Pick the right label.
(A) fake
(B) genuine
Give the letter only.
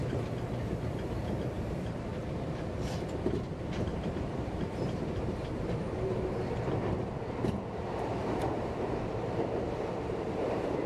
A